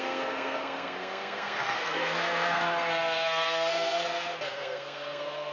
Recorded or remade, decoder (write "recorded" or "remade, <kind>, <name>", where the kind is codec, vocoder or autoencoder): remade, codec, SNAC